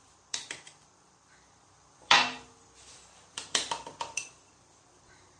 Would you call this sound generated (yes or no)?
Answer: yes